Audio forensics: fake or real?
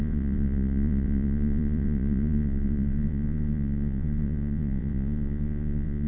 fake